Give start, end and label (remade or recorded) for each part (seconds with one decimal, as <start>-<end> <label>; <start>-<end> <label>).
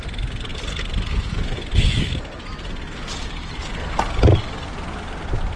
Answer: 0.0-5.6 recorded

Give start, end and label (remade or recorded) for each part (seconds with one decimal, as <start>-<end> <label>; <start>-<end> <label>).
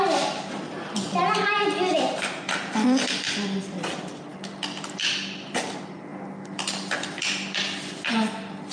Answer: 0.0-1.9 recorded; 1.9-2.7 remade; 2.7-8.7 recorded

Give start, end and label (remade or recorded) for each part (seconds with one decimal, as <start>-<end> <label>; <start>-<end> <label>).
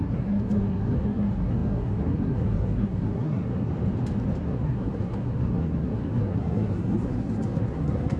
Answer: 0.0-3.7 remade; 3.7-4.4 recorded; 4.4-8.2 remade